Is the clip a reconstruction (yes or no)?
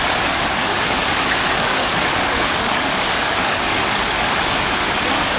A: yes